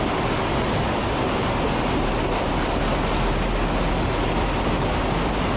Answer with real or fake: real